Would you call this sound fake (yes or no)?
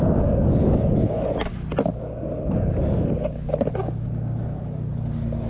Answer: no